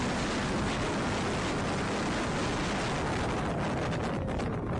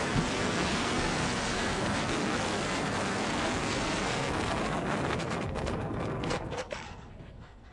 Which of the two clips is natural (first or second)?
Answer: first